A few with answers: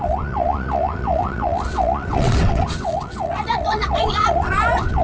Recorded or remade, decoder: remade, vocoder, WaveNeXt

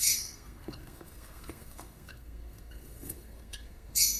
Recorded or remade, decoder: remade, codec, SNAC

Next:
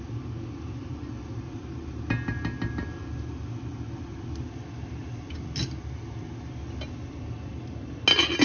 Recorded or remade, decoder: recorded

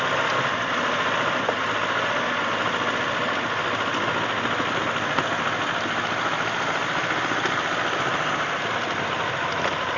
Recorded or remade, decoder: recorded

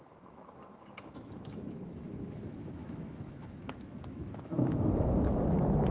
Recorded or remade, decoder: remade, autoencoder, DAC-VAE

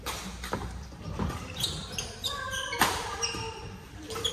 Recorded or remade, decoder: remade, vocoder, BigVGAN v2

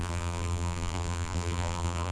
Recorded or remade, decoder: remade, vocoder, BigVGAN v2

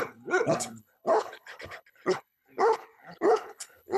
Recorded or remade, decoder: remade, codec, HILCodec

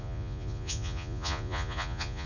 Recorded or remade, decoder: remade, vocoder, Vocos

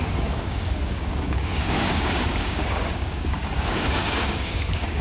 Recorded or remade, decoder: remade, codec, DAC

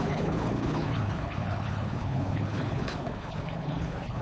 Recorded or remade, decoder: remade, codec, HILCodec